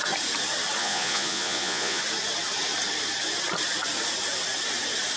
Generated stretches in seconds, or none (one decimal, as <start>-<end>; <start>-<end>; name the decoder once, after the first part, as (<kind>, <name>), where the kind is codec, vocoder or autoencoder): 0.8-2.0 (vocoder, Vocos)